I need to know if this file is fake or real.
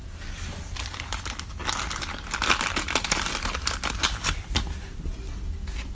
real